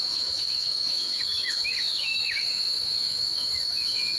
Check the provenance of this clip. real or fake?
fake